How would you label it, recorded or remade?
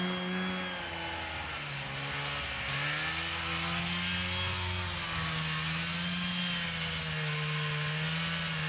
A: recorded